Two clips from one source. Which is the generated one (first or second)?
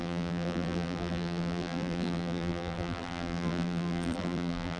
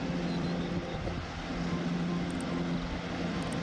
first